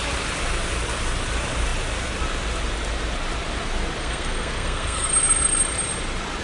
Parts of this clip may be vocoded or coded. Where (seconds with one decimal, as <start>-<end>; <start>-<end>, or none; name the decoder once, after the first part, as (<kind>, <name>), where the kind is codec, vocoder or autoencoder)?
4.0-5.1 (codec, SNAC)